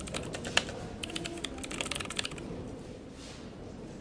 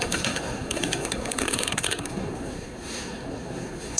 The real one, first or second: first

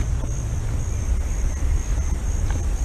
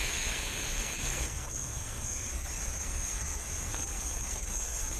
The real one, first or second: first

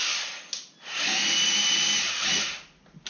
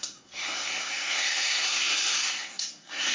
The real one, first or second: first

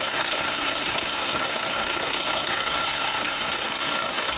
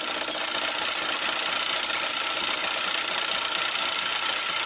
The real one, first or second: second